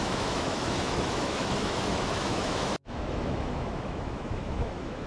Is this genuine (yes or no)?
no